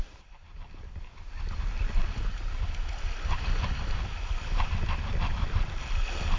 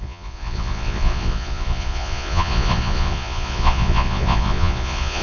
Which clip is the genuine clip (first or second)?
first